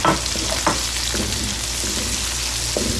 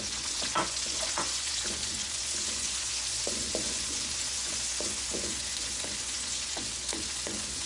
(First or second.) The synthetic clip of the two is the second